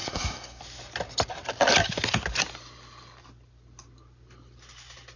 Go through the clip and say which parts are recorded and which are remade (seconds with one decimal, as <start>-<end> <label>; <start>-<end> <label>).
0.0-0.6 remade; 0.6-5.2 recorded